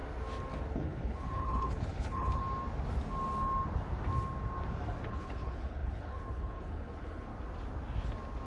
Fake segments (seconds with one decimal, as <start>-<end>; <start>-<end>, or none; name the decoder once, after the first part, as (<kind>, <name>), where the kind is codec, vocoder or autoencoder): 0.7-2.4 (codec, HILCodec); 5.1-7.3